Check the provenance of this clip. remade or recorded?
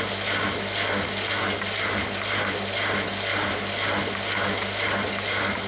recorded